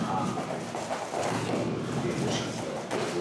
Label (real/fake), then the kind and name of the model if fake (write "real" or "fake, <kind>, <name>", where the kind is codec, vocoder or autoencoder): real